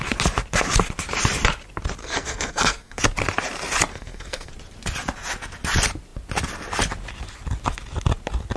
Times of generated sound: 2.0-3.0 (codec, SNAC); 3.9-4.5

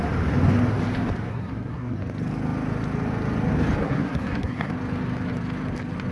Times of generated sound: 1.3-2.0 (codec, SNAC); 3.8-4.7

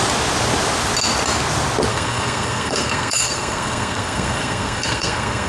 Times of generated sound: 1.9-5.5 (codec, SNAC)

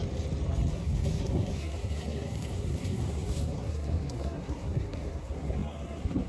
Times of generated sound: 0.7-6.3 (codec, SNAC)

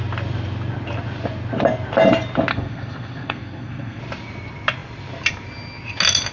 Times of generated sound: 2.5-4.0 (codec, SNAC)

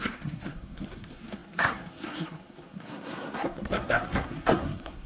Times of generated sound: 0.0-5.1 (codec, SNAC)